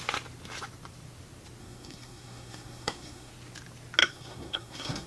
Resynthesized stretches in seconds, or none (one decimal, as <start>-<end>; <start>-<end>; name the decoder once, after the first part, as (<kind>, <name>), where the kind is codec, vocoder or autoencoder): 1.6-3.3 (codec, SNAC); 4.0-5.1